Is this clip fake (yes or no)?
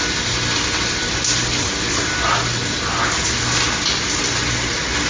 no